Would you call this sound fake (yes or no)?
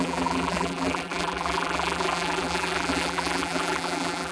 yes